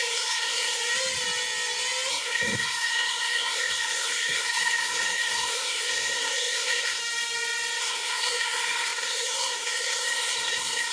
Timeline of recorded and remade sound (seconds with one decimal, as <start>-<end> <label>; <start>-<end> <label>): 0.0-0.8 remade; 0.8-2.1 recorded; 2.1-7.0 remade; 7.0-7.8 recorded; 7.8-10.9 remade